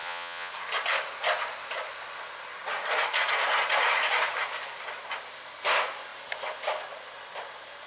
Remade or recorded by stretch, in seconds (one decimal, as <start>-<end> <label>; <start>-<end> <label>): 0.0-0.5 remade; 0.5-7.9 recorded